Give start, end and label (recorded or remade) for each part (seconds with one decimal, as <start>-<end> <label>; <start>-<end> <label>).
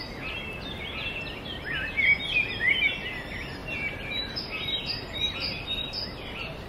0.0-6.7 recorded